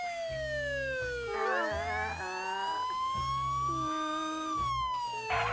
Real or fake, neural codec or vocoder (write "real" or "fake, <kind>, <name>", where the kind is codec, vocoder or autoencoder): real